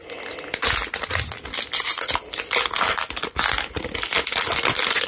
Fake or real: real